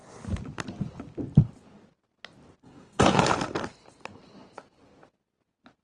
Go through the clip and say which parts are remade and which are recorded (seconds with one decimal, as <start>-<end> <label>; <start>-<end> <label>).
0.0-2.6 recorded; 2.6-3.2 remade; 3.2-5.8 recorded